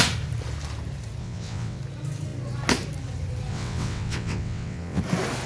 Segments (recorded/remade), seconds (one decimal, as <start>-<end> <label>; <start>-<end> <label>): 0.0-1.2 recorded; 1.2-1.8 remade; 1.8-3.5 recorded; 3.5-5.0 remade; 5.0-5.5 recorded